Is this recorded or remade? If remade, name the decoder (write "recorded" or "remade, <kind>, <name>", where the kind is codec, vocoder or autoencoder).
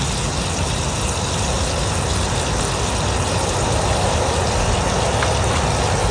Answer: recorded